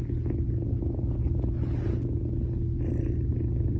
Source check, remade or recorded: recorded